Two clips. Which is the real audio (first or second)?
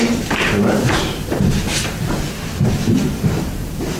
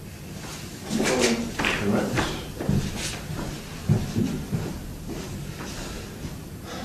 second